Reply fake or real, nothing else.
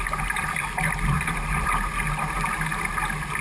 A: real